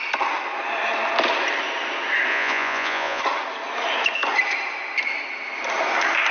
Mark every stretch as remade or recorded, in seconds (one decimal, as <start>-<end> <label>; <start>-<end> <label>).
0.0-2.3 recorded; 2.3-3.2 remade; 3.2-6.3 recorded